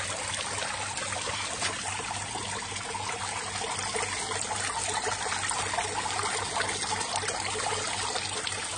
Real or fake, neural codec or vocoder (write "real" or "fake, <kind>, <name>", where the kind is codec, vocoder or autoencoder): real